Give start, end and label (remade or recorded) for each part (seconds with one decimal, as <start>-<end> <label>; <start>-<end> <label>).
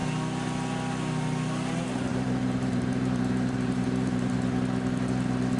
0.0-2.1 recorded; 2.1-4.3 remade; 4.3-5.6 recorded